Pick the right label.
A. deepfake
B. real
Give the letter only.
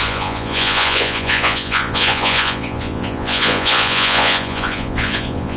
A